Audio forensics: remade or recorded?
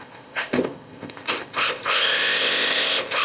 remade